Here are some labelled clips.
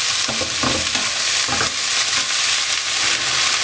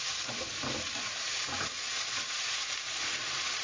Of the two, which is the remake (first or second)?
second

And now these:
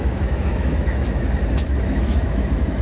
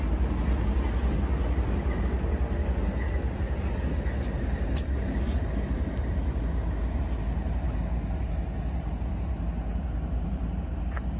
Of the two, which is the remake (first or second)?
first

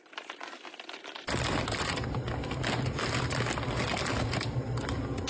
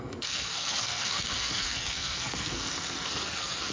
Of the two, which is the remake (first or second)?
second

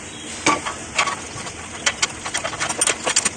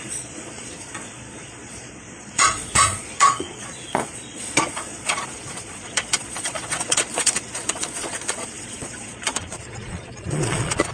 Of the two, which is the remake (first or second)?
second